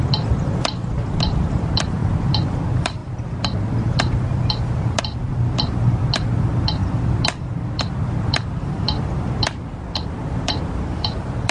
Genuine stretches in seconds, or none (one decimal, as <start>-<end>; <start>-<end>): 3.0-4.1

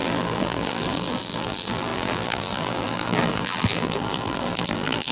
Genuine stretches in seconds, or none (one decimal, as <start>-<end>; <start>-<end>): none

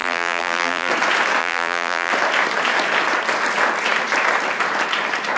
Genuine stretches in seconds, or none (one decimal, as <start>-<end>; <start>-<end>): 0.9-1.4; 2.1-5.4